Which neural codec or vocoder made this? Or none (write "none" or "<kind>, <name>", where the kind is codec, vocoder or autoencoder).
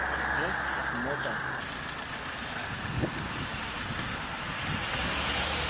none